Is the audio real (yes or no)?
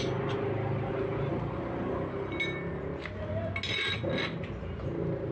yes